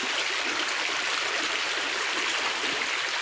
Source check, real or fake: real